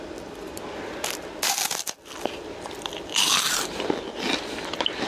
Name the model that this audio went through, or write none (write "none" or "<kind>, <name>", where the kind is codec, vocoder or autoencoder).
none